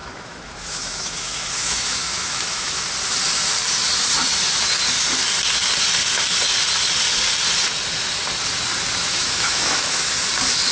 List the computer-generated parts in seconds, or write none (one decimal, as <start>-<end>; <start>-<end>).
0.0-2.8; 9.0-10.1